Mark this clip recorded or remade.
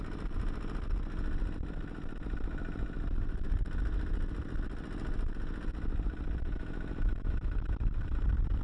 recorded